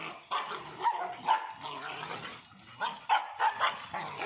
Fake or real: real